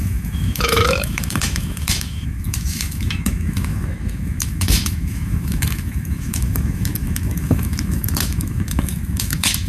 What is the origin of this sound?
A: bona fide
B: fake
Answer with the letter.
B